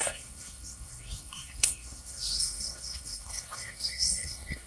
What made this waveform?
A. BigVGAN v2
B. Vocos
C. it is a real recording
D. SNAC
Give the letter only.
D